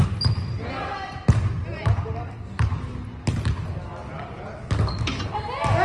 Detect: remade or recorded recorded